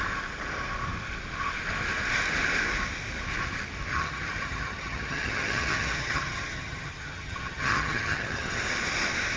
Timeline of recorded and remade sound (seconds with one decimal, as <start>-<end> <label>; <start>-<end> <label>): 0.0-3.9 recorded; 3.9-8.6 remade; 8.6-9.4 recorded